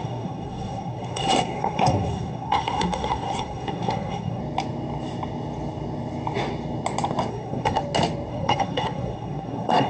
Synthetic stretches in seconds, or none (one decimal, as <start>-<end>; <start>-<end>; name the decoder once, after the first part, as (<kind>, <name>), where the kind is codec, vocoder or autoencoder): 0.0-4.4 (codec, SNAC); 7.3-7.8; 8.3-9.9

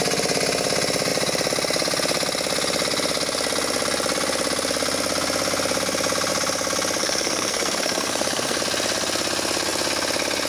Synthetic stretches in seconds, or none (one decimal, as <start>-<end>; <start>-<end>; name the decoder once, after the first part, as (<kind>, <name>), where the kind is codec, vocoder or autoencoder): 7.0-8.6 (codec, SNAC)

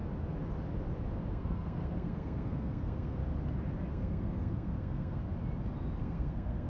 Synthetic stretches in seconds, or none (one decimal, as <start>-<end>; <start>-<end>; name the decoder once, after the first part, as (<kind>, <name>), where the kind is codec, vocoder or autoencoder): 1.3-3.2 (codec, SNAC); 3.9-5.2; 6.0-6.7

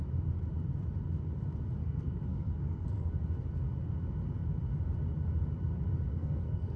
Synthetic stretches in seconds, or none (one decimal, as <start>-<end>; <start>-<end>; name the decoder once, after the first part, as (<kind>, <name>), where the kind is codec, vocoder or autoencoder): 1.8-3.1 (codec, SNAC); 6.1-6.8